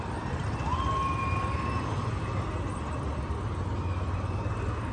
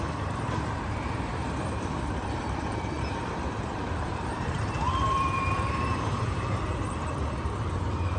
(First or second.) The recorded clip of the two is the first